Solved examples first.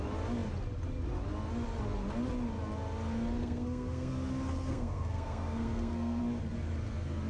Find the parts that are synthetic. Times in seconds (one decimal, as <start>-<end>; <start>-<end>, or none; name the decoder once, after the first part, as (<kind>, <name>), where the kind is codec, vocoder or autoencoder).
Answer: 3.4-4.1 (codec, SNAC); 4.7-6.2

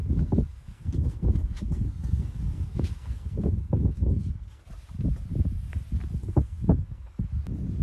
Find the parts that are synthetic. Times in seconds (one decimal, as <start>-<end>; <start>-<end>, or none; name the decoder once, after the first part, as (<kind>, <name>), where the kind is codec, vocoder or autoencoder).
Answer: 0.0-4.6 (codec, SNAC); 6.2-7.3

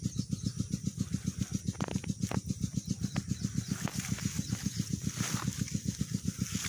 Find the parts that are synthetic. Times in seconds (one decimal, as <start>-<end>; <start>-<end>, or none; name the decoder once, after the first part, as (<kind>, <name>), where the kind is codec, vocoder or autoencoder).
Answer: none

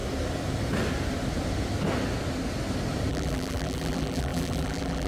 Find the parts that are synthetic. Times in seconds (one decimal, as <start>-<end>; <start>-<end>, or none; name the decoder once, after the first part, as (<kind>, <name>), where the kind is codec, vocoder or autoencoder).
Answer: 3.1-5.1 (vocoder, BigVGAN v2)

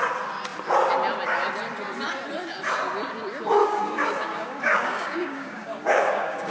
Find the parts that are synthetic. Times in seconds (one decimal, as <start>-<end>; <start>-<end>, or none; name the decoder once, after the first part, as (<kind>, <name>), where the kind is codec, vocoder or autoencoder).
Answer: 3.6-6.5 (codec, DAC)